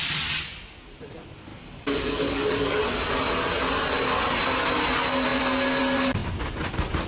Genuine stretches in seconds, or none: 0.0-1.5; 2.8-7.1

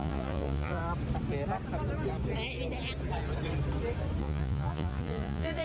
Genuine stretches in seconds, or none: 0.8-4.2

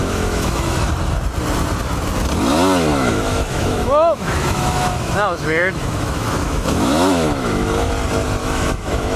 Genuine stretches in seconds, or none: 0.9-2.9; 7.9-8.4

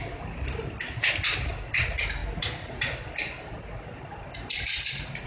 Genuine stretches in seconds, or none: 0.0-5.3

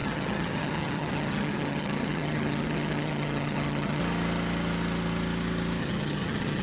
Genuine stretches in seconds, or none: 4.0-5.8

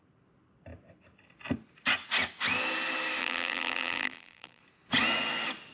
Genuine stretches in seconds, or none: 0.0-3.2; 4.6-5.7

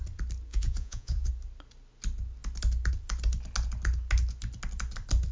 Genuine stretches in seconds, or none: 0.0-0.5; 1.3-5.3

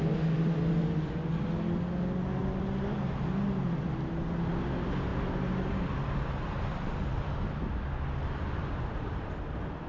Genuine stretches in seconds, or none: 0.0-9.9